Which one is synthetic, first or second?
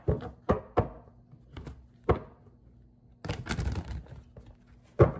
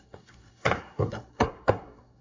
second